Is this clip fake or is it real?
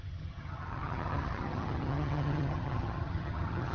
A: fake